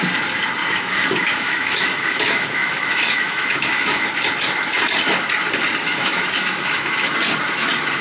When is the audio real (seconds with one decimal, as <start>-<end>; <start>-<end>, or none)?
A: 0.0-0.6; 4.1-5.8; 7.1-8.0